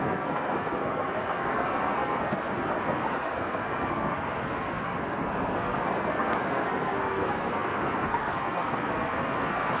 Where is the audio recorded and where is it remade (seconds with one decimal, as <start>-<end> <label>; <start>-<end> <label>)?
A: 0.0-9.8 remade